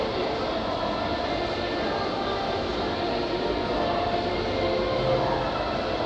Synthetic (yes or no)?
no